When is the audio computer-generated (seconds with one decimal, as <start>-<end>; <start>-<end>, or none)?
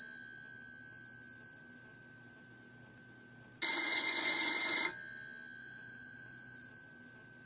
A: 3.7-4.8; 5.6-6.7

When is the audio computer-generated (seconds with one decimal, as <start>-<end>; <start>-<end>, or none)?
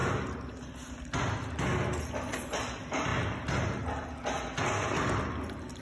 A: none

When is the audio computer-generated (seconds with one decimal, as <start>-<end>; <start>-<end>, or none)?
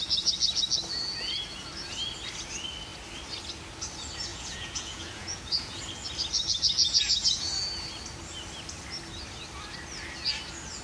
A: 4.3-5.8; 6.8-7.5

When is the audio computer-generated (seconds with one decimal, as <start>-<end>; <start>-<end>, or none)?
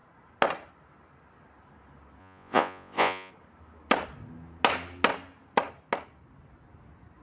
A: 2.2-3.3